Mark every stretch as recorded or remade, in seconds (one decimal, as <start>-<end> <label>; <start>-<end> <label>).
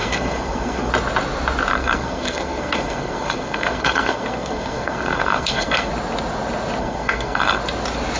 0.0-0.9 remade; 0.9-1.7 recorded; 1.7-5.9 remade; 5.9-6.8 recorded; 6.8-7.6 remade; 7.6-8.2 recorded